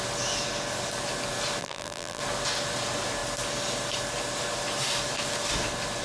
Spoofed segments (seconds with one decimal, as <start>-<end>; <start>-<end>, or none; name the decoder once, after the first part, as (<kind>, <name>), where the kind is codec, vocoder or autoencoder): 1.6-2.2 (vocoder, BigVGAN v2)